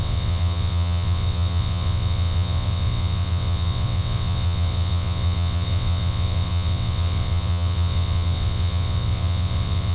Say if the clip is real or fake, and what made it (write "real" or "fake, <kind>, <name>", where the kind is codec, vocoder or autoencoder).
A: fake, vocoder, WaveNeXt